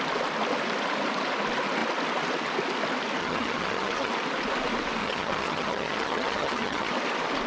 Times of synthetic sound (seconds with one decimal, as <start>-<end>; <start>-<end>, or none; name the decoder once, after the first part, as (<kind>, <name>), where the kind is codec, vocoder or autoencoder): 3.2-4.1 (vocoder, HiFi-GAN); 5.0-6.9